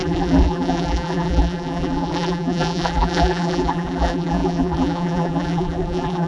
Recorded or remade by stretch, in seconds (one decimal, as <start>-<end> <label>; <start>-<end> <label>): 0.0-6.3 remade